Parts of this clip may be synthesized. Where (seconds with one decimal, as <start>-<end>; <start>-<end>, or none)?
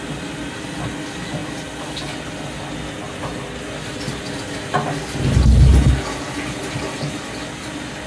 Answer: none